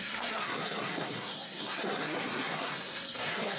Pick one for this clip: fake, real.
fake